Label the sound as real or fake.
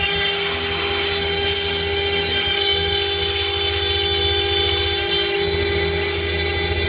real